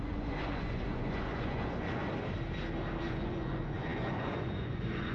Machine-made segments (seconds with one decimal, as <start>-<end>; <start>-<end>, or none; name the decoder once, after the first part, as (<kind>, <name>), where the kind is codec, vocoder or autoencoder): 0.0-2.0 (vocoder, Vocos); 3.0-5.1